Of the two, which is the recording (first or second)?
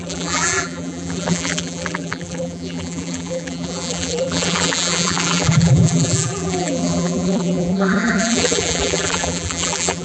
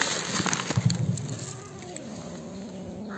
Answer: second